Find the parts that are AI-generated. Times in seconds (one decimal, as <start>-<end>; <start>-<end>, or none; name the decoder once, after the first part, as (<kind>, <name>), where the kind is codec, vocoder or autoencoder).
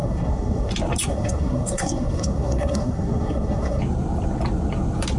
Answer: 0.0-0.7 (codec, SNAC); 1.1-3.8